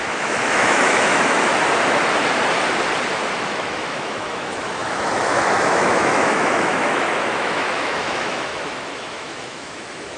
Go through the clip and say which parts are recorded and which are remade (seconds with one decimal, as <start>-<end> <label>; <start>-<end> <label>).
0.0-1.5 remade; 1.5-3.4 recorded; 3.4-10.2 remade